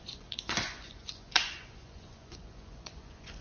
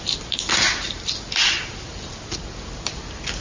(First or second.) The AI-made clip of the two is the first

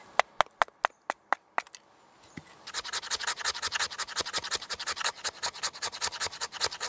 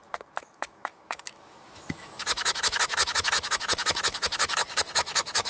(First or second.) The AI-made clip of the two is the second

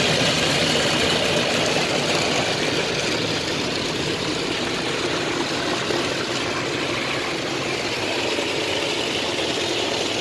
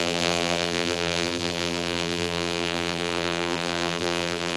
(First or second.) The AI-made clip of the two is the second